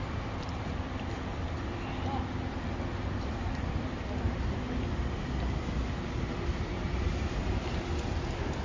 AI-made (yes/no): no